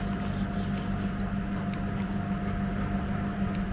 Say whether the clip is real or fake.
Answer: real